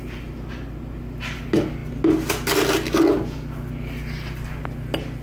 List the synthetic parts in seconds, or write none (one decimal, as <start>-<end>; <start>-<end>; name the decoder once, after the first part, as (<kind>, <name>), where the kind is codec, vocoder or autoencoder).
none